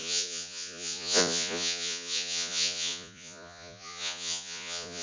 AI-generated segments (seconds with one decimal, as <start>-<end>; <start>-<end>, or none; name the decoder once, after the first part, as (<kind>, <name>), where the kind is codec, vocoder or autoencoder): 0.0-5.0 (vocoder, Vocos)